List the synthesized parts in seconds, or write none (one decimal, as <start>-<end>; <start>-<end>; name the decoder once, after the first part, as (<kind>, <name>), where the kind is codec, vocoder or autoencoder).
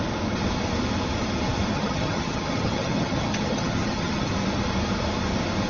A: 1.7-4.3 (vocoder, HiFi-GAN)